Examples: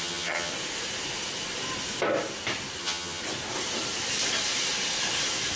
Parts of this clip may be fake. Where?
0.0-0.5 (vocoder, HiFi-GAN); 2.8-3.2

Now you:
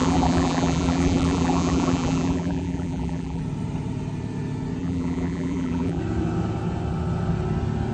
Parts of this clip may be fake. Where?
0.0-3.4 (vocoder, BigVGAN v2); 4.8-6.0

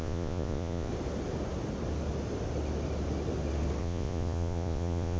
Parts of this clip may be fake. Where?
0.0-0.9 (vocoder, Vocos); 3.8-5.2

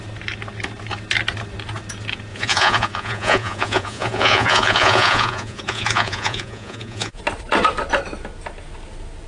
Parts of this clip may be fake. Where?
2.3-7.2 (vocoder, Vocos)